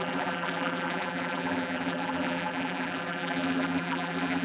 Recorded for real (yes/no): no